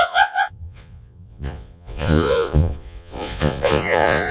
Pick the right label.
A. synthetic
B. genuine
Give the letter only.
A